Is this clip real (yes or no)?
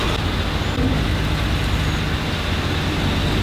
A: yes